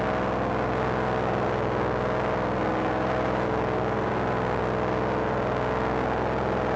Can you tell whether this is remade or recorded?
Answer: recorded